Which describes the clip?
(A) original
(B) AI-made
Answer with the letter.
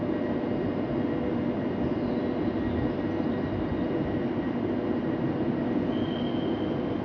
A